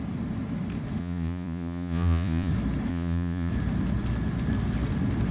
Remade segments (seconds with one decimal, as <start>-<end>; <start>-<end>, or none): 1.0-2.5; 2.9-3.5